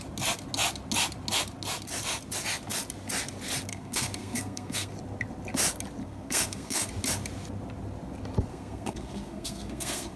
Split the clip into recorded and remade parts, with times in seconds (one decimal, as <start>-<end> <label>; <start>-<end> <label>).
0.0-3.7 recorded; 3.7-4.9 remade; 4.9-6.0 recorded; 6.0-6.9 remade; 6.9-8.5 recorded; 8.5-10.2 remade

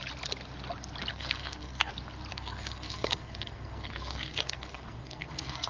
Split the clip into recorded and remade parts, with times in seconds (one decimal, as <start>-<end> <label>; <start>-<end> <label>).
0.0-1.1 recorded; 1.1-1.9 remade; 1.9-2.3 recorded; 2.3-5.7 remade